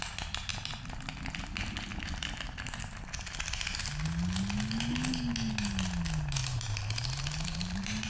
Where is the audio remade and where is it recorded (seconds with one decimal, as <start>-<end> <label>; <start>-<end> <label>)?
0.0-6.4 recorded; 6.4-8.1 remade